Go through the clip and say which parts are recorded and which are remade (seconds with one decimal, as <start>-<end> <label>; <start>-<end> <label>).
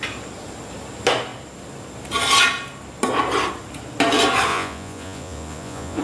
0.0-4.5 recorded; 4.5-6.0 remade